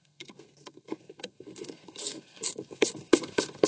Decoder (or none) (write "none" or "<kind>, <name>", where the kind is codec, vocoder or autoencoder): codec, SNAC